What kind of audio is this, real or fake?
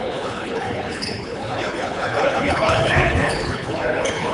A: fake